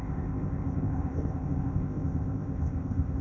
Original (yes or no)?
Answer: no